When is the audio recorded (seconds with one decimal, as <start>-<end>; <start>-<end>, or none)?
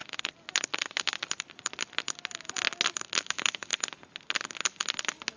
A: 0.0-3.2; 3.7-5.4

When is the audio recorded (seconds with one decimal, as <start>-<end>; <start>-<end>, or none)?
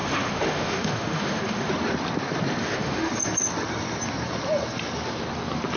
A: 1.7-2.6; 3.1-5.8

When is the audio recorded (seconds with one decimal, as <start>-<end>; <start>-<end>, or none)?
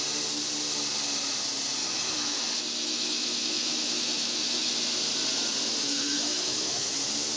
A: 0.0-1.8; 2.4-2.8; 4.7-5.8; 7.0-7.4